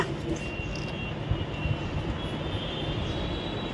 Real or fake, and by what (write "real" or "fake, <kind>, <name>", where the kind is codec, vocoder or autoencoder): real